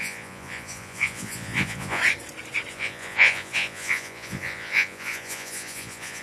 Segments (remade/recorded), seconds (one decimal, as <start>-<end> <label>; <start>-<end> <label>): 0.0-2.0 remade; 2.0-2.7 recorded; 2.7-6.2 remade